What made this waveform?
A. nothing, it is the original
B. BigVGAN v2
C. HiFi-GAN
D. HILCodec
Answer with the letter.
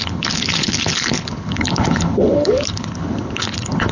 D